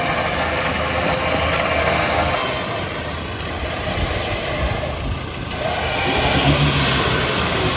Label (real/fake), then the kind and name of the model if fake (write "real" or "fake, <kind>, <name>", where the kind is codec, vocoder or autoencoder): real